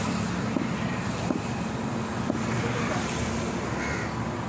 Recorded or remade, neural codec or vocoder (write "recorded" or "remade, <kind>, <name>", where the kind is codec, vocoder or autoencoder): recorded